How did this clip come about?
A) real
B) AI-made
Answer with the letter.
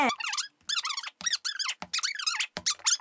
A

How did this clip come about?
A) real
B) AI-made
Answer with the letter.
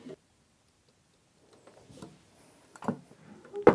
A